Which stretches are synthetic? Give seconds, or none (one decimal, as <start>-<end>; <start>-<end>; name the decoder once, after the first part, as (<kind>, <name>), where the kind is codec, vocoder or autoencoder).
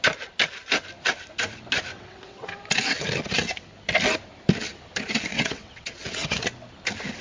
1.9-2.5 (vocoder, WaveNeXt); 5.3-6.4